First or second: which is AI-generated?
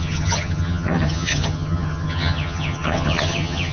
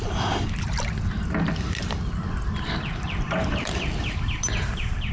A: first